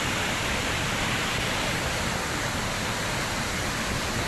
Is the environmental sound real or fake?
real